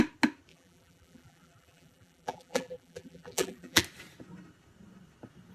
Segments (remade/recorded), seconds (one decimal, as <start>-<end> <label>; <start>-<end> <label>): 0.0-0.5 recorded; 0.5-3.8 remade; 3.8-5.5 recorded